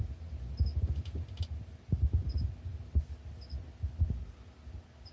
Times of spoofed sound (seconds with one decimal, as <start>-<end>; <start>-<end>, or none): none